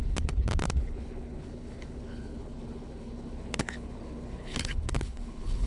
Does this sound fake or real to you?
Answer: fake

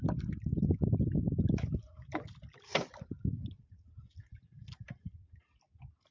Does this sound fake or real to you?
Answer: real